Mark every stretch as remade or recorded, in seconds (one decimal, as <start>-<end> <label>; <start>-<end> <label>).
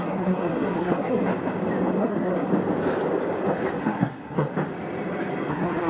0.0-1.3 remade; 1.3-2.0 recorded; 2.0-2.5 remade; 2.5-3.8 recorded; 3.8-4.5 remade; 4.5-5.5 recorded; 5.5-5.9 remade